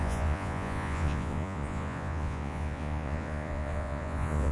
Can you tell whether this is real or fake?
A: fake